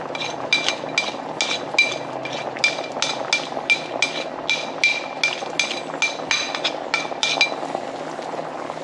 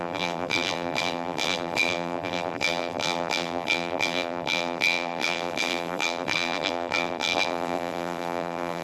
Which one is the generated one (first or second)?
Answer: second